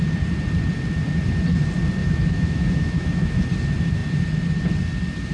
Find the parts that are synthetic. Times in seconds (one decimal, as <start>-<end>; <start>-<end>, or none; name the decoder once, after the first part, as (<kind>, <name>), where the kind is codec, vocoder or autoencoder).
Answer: 2.0-3.4 (autoencoder, DAC-VAE)